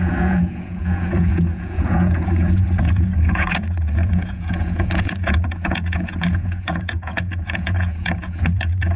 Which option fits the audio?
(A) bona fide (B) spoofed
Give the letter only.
B